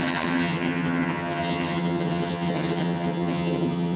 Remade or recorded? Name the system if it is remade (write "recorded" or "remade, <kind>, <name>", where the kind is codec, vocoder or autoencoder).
remade, vocoder, HiFi-GAN